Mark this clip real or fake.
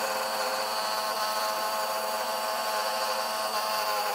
fake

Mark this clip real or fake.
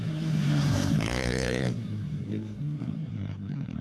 fake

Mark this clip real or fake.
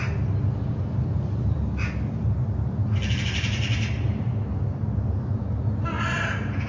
real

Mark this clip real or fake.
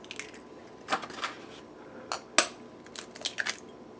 real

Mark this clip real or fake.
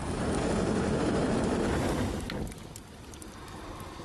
real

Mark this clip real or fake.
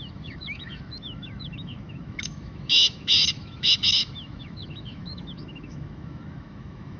fake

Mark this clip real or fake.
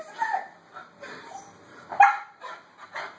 real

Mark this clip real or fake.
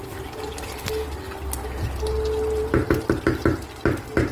real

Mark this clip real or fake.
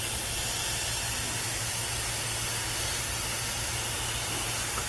real